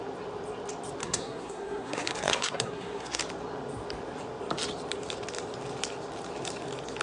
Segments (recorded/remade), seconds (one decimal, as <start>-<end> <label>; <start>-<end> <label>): 0.0-1.0 recorded; 1.0-3.2 remade; 3.2-7.0 recorded